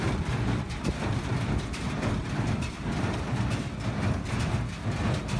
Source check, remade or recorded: recorded